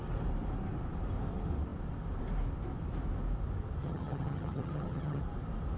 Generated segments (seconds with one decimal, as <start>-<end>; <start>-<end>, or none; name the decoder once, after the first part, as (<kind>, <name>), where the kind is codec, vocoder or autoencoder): 3.8-5.2 (vocoder, HiFi-GAN)

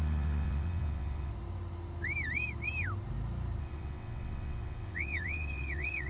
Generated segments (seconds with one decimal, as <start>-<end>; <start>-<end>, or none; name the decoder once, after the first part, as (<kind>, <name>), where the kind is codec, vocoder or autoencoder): 0.0-1.3 (vocoder, WaveNeXt); 3.6-6.1

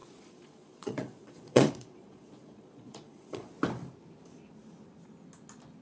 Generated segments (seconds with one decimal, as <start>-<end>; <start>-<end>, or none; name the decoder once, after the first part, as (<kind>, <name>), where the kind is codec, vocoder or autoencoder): 0.0-3.5 (vocoder, Vocos)

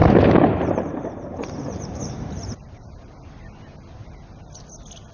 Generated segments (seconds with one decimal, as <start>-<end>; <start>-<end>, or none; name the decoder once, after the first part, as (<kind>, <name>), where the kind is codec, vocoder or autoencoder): 0.0-3.1 (vocoder, BigVGAN v2)

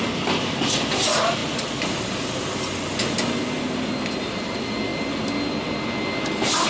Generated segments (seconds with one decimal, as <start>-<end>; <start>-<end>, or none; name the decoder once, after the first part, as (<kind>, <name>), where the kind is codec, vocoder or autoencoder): none